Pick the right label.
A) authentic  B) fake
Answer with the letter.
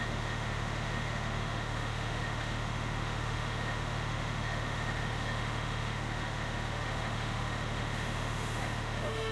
B